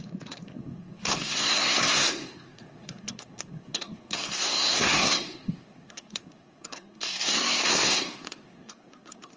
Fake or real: fake